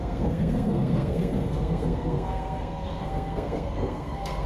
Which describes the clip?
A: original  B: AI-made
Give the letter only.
B